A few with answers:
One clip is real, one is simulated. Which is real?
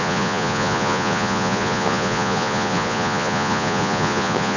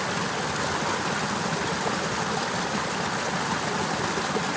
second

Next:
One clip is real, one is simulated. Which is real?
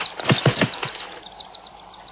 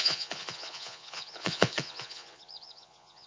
first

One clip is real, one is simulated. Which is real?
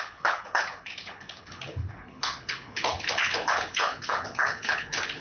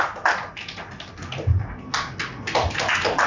second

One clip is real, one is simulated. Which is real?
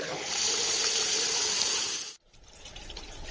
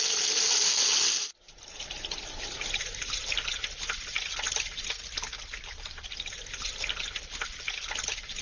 second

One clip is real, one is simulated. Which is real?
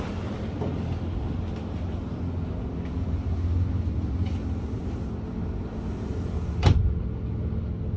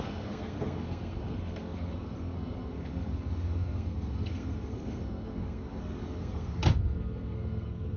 first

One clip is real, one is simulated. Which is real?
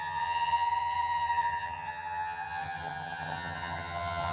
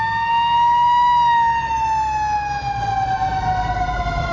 second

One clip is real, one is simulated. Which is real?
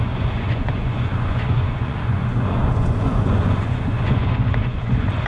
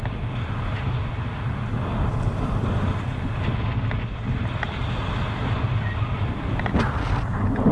second